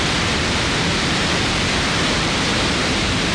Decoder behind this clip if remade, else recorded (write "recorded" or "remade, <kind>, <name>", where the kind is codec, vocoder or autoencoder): remade, vocoder, BigVGAN v2